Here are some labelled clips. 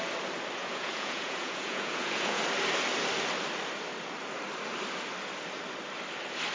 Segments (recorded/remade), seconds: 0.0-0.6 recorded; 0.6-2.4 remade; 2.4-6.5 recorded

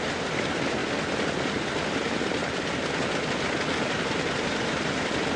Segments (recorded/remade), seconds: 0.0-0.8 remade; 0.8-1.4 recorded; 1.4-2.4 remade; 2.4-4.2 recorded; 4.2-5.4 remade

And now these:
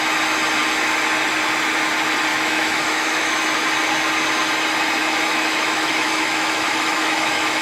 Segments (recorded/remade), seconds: 0.0-2.3 recorded; 2.3-3.4 remade; 3.4-5.0 recorded; 5.0-7.6 remade

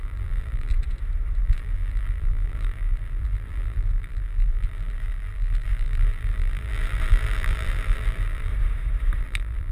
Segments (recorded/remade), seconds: 0.0-0.7 remade; 0.7-1.4 recorded; 1.4-8.5 remade; 8.5-9.2 recorded; 9.2-9.7 remade

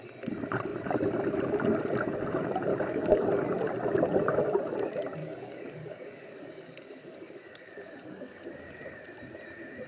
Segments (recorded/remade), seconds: 0.0-2.7 recorded; 2.7-3.3 remade; 3.3-5.2 recorded; 5.2-8.8 remade; 8.8-9.9 recorded

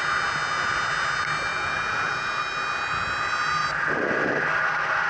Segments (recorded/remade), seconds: 0.0-1.5 recorded; 1.5-2.4 remade; 2.4-5.1 recorded

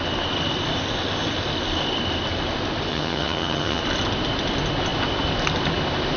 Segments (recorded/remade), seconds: 0.0-2.9 recorded; 2.9-3.8 remade; 3.8-6.2 recorded